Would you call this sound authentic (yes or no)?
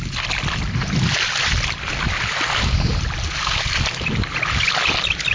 yes